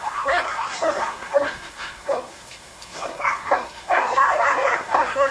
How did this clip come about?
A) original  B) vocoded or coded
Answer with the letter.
B